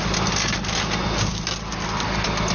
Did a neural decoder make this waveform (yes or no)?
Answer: no